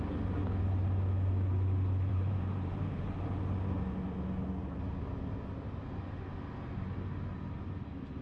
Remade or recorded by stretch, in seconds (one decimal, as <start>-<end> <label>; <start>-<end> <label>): 0.0-2.1 recorded; 2.1-3.0 remade; 3.0-8.2 recorded